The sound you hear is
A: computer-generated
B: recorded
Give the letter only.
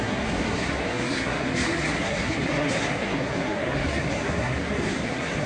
A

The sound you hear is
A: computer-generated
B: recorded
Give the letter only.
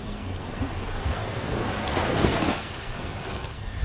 A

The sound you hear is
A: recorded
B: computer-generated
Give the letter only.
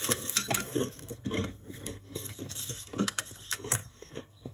B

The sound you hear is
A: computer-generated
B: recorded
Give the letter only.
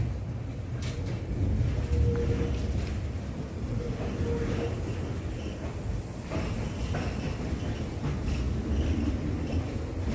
B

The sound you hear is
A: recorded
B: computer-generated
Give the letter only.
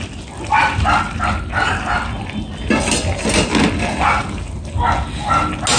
A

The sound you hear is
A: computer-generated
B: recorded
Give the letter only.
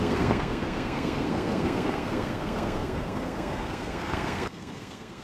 A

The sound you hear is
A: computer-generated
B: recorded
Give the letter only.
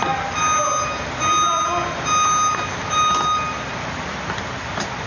B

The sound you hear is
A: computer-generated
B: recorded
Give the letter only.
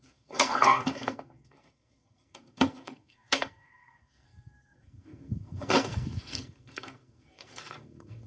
A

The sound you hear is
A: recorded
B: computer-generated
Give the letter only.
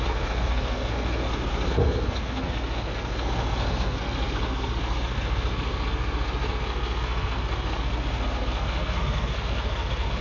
B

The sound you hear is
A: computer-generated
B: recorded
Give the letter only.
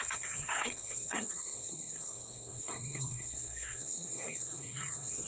A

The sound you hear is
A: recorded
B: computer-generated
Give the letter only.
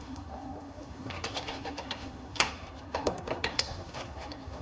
B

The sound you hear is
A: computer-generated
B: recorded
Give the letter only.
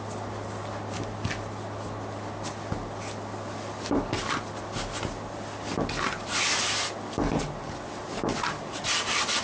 B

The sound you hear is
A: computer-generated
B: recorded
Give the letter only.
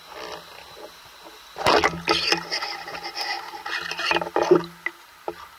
B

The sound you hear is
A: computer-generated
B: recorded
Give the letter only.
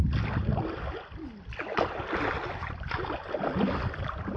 B